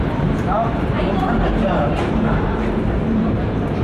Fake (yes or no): yes